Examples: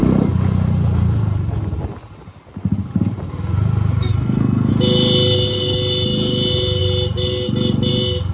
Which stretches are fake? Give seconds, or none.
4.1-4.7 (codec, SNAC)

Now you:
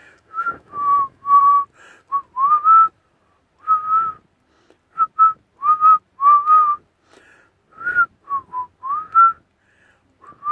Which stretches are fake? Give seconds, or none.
0.0-1.4 (autoencoder, DAC-VAE)

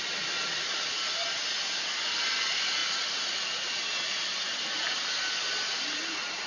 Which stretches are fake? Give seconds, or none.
0.0-6.5 (vocoder, BigVGAN v2)

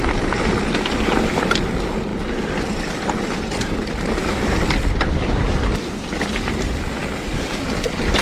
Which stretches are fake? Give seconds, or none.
0.0-8.2 (vocoder, BigVGAN v2)